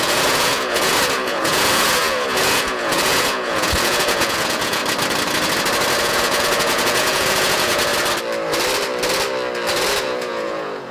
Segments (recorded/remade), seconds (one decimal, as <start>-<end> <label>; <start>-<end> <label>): 0.0-4.8 remade; 4.8-6.0 recorded; 6.0-7.9 remade; 7.9-10.0 recorded; 10.0-10.9 remade